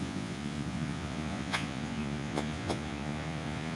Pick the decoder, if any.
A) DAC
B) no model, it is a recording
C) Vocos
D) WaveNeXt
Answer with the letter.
C